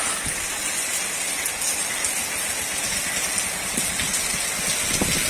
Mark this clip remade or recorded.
recorded